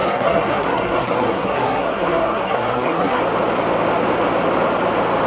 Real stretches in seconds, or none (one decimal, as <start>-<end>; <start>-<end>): 3.2-5.3